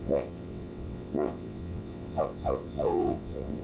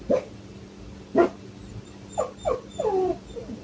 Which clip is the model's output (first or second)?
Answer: first